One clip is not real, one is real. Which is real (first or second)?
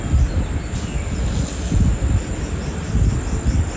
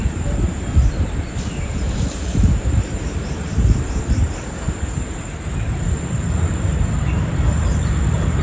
first